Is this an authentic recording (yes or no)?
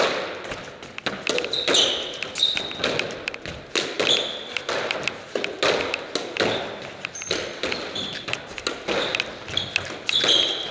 yes